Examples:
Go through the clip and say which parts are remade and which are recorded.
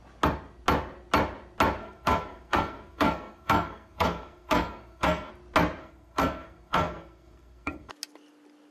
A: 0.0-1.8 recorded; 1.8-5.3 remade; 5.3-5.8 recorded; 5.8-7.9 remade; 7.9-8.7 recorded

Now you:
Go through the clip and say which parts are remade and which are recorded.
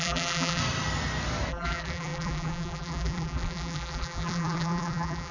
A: 0.0-0.6 remade; 0.6-1.5 recorded; 1.5-5.3 remade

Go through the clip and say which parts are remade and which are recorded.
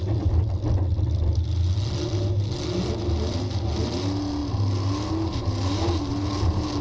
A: 0.0-6.8 recorded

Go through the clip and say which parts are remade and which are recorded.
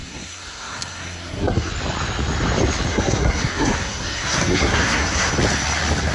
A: 0.0-1.7 remade; 1.7-2.9 recorded; 2.9-5.3 remade; 5.3-6.1 recorded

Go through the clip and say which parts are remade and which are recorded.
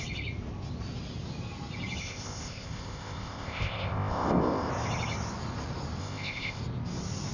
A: 0.0-2.0 recorded; 2.0-4.7 remade; 4.7-6.0 recorded; 6.0-6.6 remade; 6.6-7.3 recorded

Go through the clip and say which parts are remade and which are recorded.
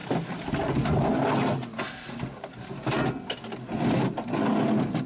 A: 0.0-5.1 recorded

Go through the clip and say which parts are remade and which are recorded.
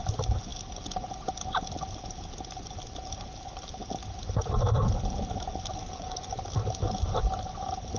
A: 0.0-5.8 recorded; 5.8-6.4 remade; 6.4-8.0 recorded